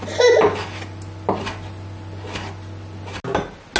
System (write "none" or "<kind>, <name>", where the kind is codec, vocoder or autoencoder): none